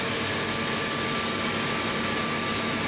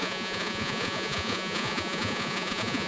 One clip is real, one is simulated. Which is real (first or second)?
first